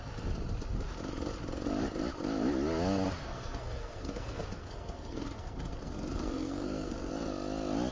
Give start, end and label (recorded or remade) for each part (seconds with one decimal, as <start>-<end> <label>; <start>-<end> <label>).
0.0-3.2 recorded; 3.2-7.1 remade; 7.1-7.9 recorded